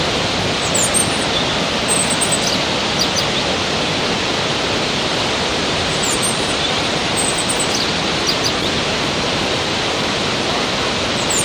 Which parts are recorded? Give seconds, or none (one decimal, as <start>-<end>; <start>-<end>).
0.0-5.1; 7.3-11.4